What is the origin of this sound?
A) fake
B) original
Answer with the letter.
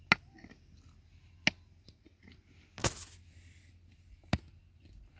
B